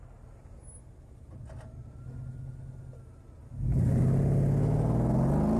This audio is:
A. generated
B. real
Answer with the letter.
B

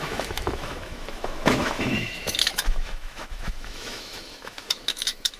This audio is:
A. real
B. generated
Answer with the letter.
B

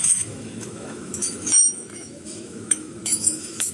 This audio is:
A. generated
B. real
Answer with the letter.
A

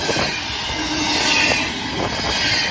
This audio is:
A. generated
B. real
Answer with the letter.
B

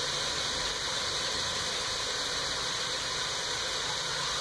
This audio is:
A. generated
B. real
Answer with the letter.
B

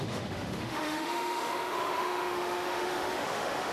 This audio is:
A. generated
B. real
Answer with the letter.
A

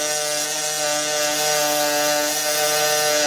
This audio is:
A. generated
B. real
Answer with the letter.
B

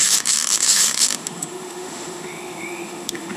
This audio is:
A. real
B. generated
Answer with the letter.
B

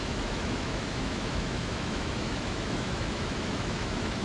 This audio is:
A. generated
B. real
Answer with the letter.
A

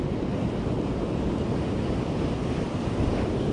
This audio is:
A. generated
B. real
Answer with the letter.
B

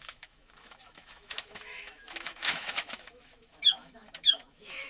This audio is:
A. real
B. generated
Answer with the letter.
B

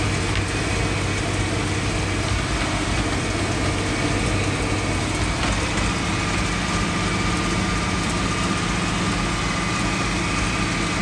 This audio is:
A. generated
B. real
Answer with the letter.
B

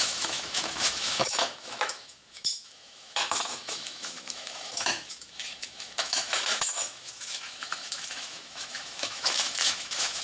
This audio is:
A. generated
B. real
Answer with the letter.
A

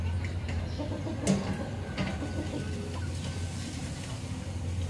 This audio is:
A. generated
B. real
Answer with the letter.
B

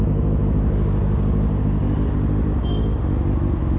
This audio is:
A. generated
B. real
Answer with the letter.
B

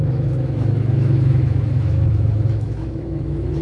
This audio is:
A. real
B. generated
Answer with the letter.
B